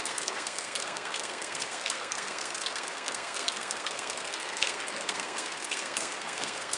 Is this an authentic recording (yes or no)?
no